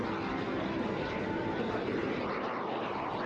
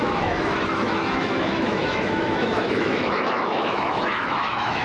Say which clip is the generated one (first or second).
second